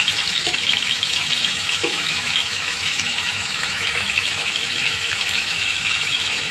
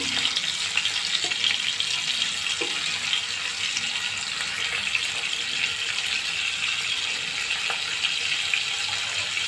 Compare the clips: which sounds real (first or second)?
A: second